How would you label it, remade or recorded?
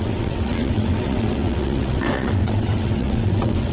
remade